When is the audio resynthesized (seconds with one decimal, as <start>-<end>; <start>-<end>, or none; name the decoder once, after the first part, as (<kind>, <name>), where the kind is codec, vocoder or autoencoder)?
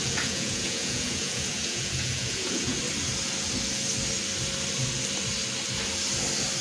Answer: 0.0-2.8 (vocoder, Vocos)